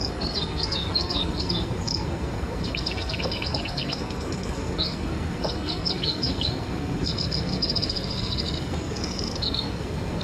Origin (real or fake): fake